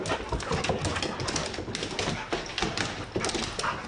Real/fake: real